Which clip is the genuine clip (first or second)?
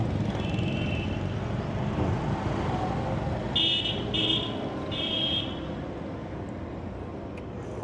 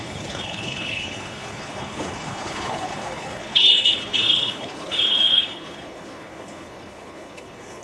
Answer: first